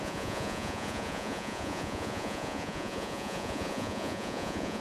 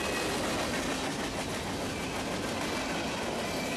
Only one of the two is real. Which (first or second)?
second